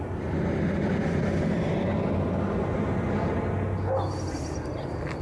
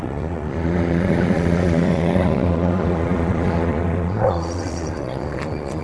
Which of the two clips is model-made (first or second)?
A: second